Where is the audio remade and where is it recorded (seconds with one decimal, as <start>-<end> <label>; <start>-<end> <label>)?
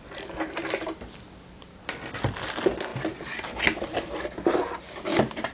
0.0-5.5 recorded